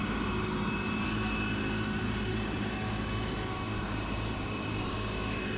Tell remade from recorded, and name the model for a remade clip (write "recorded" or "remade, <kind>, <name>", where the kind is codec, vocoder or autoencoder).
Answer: recorded